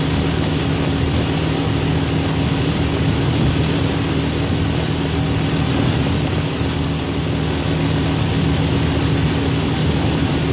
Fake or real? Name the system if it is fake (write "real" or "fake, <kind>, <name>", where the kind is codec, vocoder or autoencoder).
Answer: real